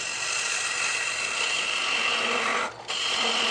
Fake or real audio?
fake